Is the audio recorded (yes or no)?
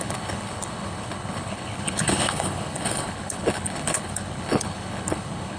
no